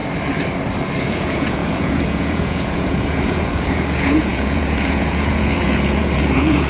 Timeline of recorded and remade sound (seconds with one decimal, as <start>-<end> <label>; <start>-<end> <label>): 0.0-1.0 recorded; 1.0-6.7 remade